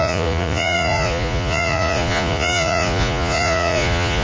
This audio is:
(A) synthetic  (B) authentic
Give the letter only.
A